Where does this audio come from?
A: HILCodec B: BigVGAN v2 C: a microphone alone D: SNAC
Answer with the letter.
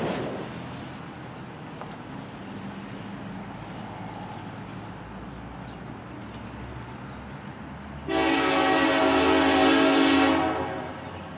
C